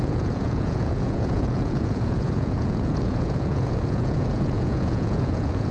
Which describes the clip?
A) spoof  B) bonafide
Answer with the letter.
A